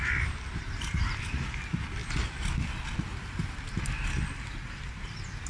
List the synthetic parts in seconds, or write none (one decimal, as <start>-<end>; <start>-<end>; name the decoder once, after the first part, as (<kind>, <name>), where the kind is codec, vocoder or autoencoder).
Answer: none